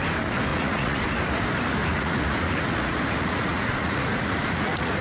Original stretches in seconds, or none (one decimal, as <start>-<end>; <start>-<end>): 0.0-0.5; 1.1-1.8